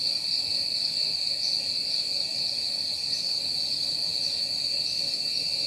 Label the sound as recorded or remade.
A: recorded